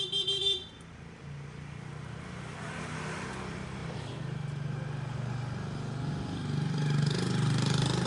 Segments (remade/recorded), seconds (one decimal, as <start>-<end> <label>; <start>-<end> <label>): 0.0-8.1 recorded